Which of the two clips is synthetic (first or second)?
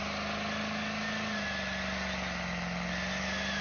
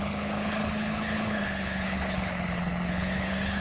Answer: second